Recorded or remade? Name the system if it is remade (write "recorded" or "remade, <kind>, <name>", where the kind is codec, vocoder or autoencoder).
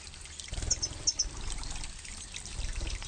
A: recorded